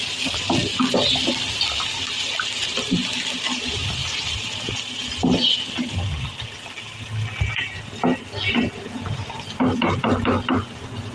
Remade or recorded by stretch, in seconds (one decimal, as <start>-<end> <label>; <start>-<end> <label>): 0.0-11.1 recorded